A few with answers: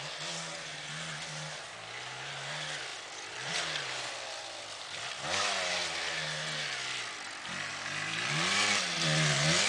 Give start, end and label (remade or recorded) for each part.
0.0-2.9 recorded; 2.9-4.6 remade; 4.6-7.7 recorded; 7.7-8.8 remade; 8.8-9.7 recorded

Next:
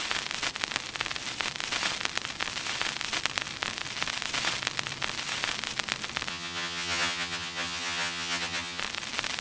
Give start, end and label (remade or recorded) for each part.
0.0-6.3 recorded; 6.3-8.8 remade; 8.8-9.4 recorded

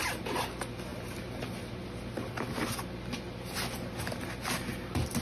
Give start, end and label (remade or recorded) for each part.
0.0-5.2 recorded

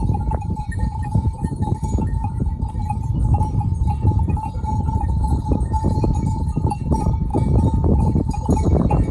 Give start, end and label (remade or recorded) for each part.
0.0-2.8 remade; 2.8-3.9 recorded; 3.9-5.3 remade; 5.3-6.4 recorded; 6.4-7.3 remade; 7.3-8.0 recorded; 8.0-9.1 remade